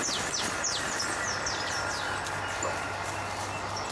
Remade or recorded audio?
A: recorded